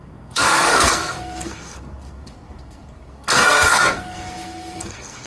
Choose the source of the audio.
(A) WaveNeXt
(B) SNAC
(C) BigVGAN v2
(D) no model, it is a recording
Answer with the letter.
B